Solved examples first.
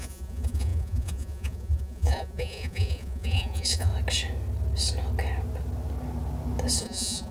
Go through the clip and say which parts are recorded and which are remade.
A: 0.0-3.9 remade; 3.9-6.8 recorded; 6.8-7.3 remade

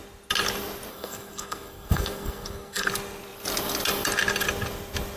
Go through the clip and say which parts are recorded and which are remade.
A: 0.0-0.9 recorded; 0.9-2.9 remade; 2.9-5.2 recorded

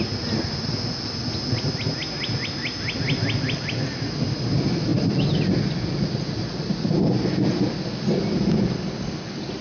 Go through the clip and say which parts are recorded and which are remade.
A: 0.0-9.6 recorded

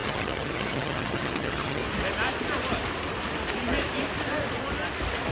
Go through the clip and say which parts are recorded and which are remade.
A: 0.0-1.8 remade; 1.8-5.3 recorded

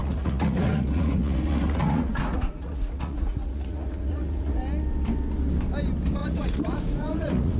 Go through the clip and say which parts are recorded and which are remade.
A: 0.0-4.6 remade; 4.6-6.2 recorded; 6.2-7.6 remade

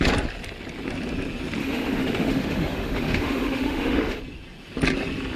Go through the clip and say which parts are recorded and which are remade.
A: 0.0-1.6 recorded; 1.6-4.2 remade; 4.2-5.4 recorded